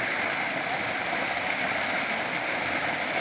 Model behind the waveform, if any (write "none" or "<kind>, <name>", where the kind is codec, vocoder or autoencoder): none